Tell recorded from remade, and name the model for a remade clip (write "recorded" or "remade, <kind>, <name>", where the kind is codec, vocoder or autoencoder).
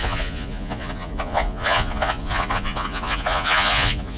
remade, vocoder, Vocos